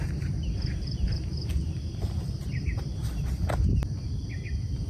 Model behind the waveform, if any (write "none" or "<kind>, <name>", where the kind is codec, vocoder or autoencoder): none